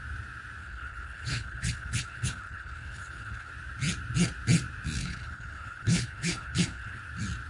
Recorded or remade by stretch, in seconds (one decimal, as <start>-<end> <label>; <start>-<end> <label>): 0.0-0.6 recorded; 0.6-3.5 remade; 3.5-5.0 recorded; 5.0-7.0 remade; 7.0-7.5 recorded